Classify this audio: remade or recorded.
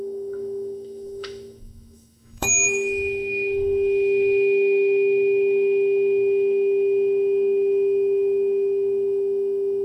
remade